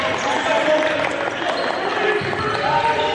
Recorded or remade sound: recorded